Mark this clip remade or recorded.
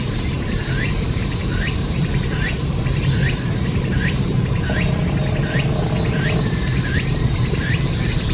recorded